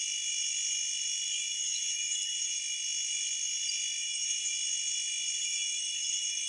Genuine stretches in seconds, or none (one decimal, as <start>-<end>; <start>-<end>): 0.0-1.4; 2.6-4.0; 4.5-5.4